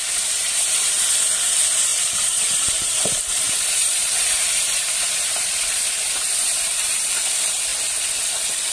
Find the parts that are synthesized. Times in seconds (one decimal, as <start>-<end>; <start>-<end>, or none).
0.0-0.6; 1.9-7.1